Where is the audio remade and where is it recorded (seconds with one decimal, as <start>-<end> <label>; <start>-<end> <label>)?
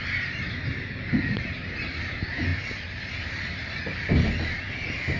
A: 0.0-5.2 recorded